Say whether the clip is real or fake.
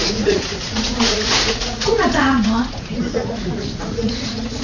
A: fake